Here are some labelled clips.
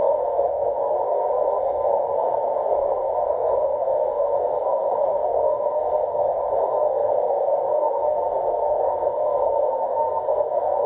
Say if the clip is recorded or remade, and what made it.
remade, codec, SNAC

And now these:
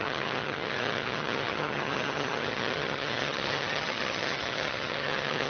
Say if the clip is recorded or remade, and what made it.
remade, vocoder, HiFi-GAN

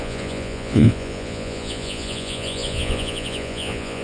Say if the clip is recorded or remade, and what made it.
remade, vocoder, Vocos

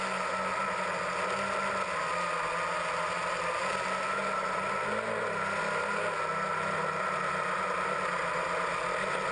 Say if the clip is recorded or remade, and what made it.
recorded